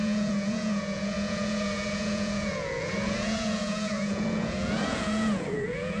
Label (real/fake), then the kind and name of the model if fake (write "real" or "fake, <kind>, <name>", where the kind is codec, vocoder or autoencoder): fake, vocoder, Vocos